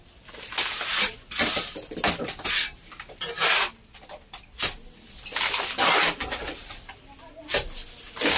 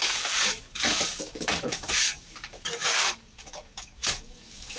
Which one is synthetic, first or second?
second